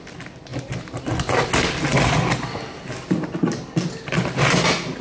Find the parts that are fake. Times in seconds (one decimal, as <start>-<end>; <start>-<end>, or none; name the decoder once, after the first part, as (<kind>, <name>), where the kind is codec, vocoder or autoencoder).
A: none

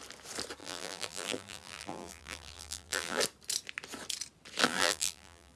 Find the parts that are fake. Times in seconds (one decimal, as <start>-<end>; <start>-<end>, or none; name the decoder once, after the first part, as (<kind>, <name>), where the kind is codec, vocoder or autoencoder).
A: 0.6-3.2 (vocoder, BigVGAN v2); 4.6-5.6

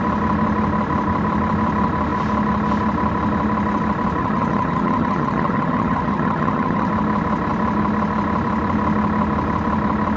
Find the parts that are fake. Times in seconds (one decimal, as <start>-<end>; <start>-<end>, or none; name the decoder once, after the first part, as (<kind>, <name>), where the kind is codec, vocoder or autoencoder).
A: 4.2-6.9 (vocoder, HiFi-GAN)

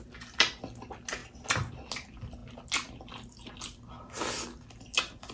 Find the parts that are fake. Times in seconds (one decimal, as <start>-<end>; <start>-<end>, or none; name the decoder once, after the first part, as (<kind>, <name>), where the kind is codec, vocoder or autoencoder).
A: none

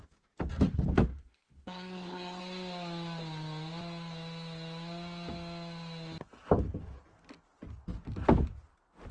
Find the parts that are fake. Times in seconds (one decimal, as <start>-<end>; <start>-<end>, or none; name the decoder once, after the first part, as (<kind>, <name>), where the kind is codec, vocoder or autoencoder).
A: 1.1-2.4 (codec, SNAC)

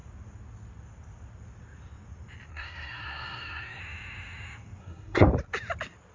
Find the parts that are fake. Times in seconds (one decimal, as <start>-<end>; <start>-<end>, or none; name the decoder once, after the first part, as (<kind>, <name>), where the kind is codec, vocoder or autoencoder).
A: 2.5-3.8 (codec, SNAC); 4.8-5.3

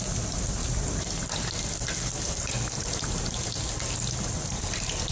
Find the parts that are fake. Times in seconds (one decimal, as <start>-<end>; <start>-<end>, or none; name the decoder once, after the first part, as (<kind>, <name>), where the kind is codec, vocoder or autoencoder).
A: none